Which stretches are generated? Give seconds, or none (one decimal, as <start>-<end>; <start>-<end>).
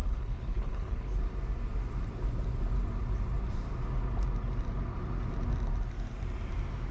0.0-1.2